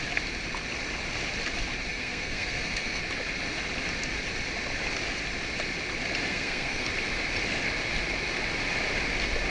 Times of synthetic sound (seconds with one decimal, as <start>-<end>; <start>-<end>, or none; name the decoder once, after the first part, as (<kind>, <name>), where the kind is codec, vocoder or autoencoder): 1.9-3.0 (codec, SNAC); 6.3-6.9